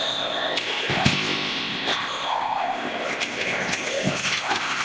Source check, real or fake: fake